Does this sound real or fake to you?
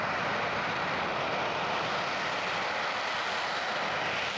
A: real